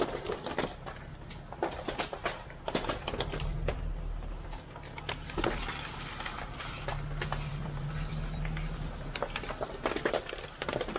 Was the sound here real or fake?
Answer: fake